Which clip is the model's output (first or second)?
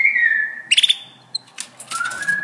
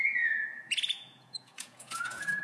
second